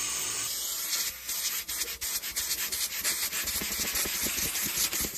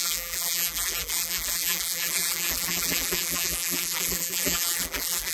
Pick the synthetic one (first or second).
second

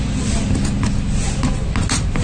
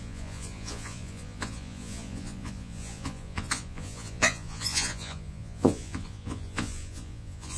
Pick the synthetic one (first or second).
second